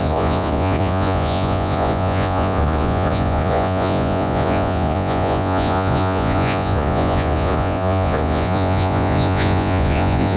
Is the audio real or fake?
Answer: fake